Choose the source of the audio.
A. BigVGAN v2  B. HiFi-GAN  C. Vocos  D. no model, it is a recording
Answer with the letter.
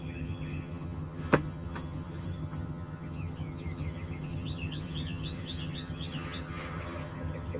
B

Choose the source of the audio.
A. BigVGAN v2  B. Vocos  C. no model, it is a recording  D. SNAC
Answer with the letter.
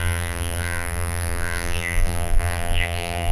A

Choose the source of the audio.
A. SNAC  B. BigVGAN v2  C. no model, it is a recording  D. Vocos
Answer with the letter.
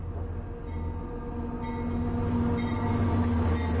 C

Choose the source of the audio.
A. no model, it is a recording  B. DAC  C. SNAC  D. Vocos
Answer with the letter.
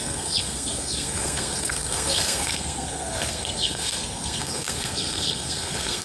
C